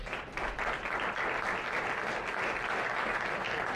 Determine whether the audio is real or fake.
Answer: real